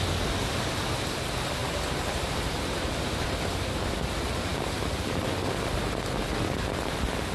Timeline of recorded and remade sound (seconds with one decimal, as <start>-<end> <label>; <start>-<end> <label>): 0.0-1.6 recorded; 1.6-3.2 remade; 3.2-7.3 recorded